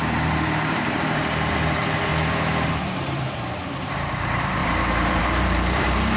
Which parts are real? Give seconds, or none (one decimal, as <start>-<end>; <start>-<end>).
2.1-2.7